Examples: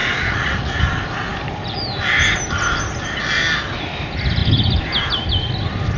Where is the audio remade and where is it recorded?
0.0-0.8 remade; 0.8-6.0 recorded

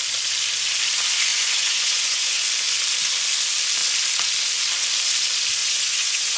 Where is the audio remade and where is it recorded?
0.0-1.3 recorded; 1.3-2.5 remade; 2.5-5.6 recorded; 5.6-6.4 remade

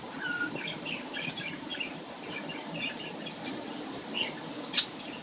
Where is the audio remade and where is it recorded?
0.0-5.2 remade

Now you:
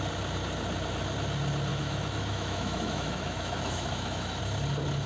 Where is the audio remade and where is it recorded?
0.0-1.7 recorded; 1.7-4.4 remade; 4.4-5.1 recorded

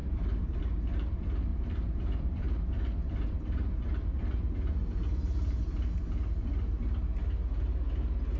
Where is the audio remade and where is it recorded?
0.0-0.6 remade; 0.6-1.5 recorded; 1.5-5.6 remade; 5.6-8.4 recorded